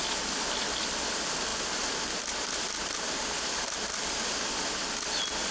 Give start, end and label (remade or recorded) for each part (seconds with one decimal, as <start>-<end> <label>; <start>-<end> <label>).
0.0-1.5 recorded; 1.5-4.8 remade; 4.8-5.5 recorded